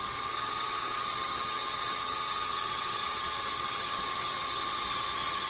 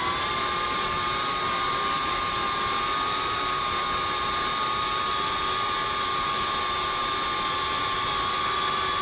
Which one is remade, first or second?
first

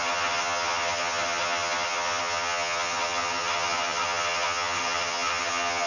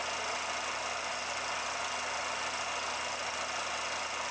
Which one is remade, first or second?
first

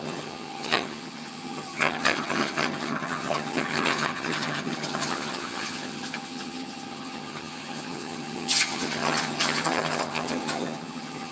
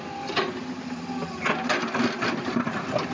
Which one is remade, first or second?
first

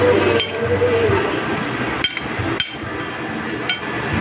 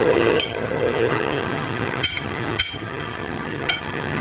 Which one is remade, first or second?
second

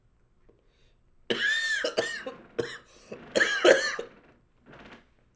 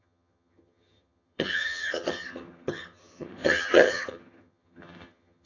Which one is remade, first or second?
second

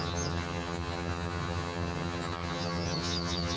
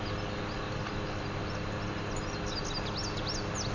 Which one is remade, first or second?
first